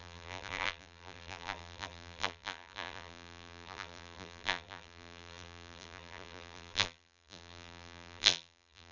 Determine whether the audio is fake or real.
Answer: fake